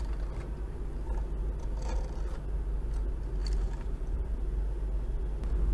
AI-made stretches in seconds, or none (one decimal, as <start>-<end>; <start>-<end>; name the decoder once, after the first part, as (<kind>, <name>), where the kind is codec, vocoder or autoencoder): 3.4-4.3 (vocoder, BigVGAN v2)